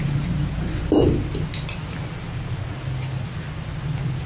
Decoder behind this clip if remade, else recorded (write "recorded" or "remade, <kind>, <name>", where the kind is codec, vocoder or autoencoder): recorded